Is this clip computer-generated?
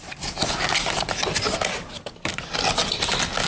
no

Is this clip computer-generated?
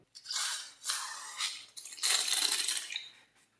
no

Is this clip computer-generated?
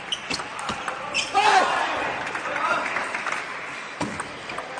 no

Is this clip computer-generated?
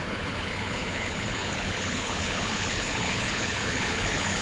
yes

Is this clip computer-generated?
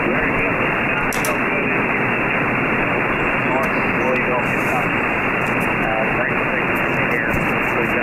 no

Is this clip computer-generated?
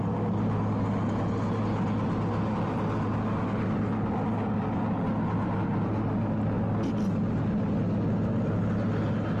no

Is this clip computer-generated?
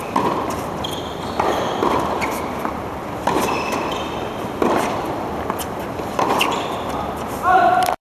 yes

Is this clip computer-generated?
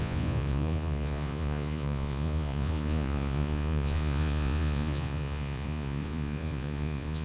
yes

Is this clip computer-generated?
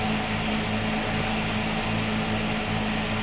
no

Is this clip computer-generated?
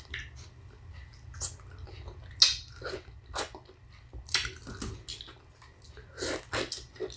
no